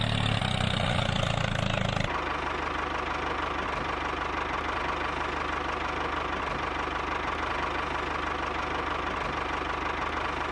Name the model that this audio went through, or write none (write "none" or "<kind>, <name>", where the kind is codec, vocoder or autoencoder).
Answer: none